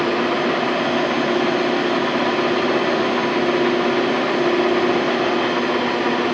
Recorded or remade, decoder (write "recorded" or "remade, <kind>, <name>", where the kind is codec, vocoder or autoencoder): recorded